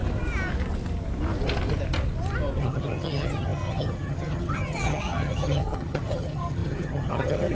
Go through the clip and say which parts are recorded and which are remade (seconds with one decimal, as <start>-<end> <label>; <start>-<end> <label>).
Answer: 0.0-2.6 recorded; 2.6-7.5 remade